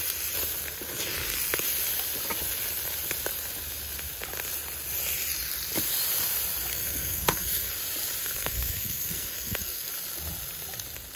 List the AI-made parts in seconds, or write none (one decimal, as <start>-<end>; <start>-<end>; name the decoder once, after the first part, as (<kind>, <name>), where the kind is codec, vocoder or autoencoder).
6.7-7.7 (codec, SNAC); 8.2-9.9